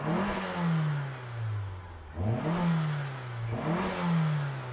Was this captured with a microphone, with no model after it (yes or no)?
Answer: yes